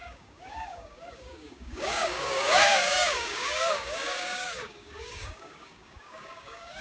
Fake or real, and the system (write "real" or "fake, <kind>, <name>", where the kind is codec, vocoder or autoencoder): fake, codec, DAC